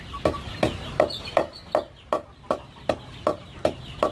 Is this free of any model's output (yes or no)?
yes